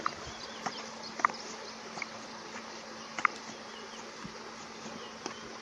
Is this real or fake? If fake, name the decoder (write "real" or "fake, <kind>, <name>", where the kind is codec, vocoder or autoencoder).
real